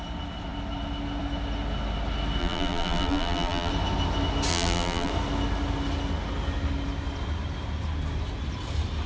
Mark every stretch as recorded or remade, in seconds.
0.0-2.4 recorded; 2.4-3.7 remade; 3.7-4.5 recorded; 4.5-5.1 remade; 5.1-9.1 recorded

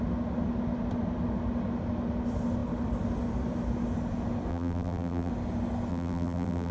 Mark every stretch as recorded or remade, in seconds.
0.0-4.5 recorded; 4.5-5.3 remade; 5.3-5.9 recorded; 5.9-6.7 remade

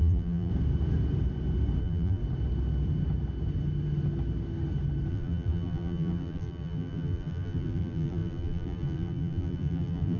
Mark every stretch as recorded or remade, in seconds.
0.0-0.5 remade; 0.5-1.8 recorded; 1.8-2.2 remade; 2.2-5.1 recorded; 5.1-10.2 remade

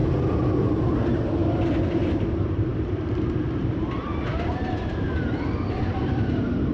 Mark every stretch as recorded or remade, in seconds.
0.0-0.6 recorded; 0.6-6.7 remade

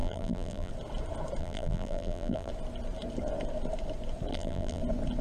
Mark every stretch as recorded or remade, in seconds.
0.0-0.7 remade; 0.7-1.4 recorded; 1.4-2.5 remade; 2.5-4.3 recorded; 4.3-4.8 remade; 4.8-5.2 recorded